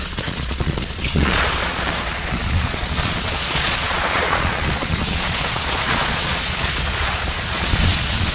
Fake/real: fake